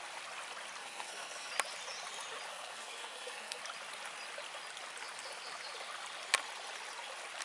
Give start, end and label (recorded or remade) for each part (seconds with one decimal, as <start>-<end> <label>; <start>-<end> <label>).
0.0-0.8 recorded; 0.8-1.5 remade; 1.5-2.5 recorded; 2.5-3.6 remade; 3.6-7.4 recorded